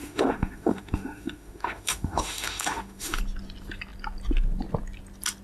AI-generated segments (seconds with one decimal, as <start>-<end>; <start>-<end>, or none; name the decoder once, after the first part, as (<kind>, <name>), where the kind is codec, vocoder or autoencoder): 0.0-3.2 (autoencoder, DAC-VAE)